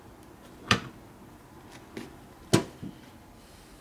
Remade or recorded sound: recorded